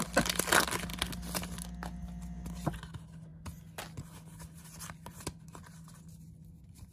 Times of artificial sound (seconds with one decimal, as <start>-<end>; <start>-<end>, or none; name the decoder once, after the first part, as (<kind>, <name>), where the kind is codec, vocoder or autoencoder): none